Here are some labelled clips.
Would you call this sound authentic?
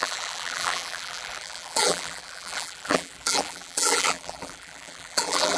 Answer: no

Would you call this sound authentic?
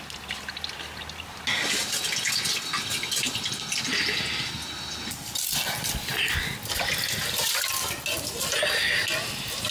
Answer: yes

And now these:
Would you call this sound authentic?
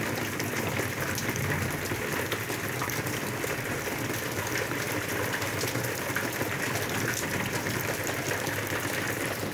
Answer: yes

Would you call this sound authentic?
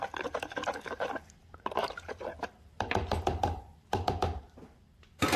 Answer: no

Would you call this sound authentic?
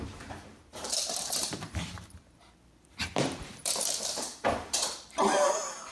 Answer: no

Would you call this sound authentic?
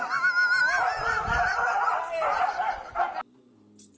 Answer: yes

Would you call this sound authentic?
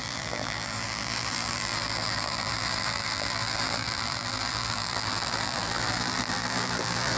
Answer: no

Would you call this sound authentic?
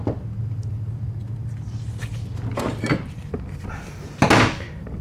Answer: yes